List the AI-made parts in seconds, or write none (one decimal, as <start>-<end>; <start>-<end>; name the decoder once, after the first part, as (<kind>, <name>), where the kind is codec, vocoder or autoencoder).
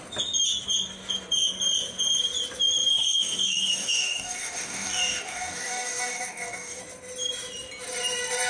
2.9-6.8 (codec, DAC)